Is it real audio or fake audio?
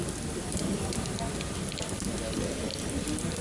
real